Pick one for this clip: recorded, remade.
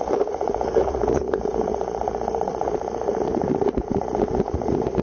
remade